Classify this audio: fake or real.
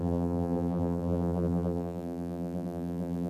fake